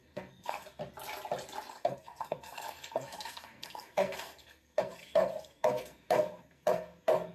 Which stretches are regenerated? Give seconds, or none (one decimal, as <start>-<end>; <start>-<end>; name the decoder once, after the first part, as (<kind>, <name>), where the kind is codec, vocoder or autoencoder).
0.0-0.8 (codec, SNAC); 1.7-7.3